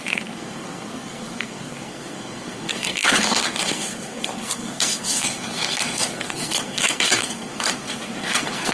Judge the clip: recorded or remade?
remade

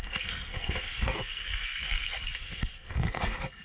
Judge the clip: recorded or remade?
remade